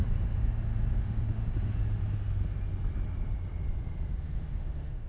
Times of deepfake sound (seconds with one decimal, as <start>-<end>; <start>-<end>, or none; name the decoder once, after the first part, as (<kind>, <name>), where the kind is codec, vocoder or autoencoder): 0.9-1.4 (autoencoder, DAC-VAE); 4.2-5.1